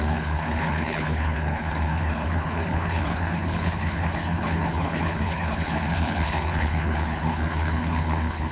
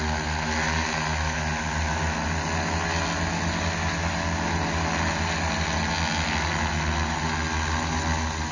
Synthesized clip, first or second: first